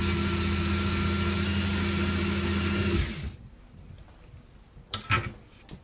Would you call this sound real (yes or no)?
yes